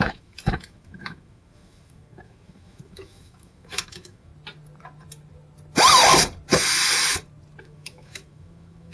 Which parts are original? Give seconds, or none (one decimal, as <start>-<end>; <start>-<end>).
4.3-7.6